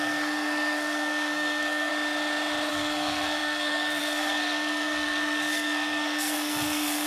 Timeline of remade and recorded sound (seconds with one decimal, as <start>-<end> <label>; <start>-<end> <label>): 0.0-1.9 remade; 1.9-2.7 recorded; 2.7-7.1 remade